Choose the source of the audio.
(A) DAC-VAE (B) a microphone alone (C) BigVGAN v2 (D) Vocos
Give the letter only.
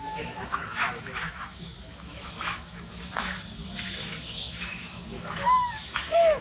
A